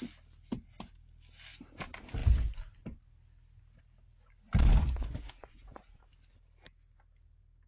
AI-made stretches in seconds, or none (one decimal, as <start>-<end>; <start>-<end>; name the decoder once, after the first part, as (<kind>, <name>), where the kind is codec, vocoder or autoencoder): 4.8-6.1 (vocoder, Vocos)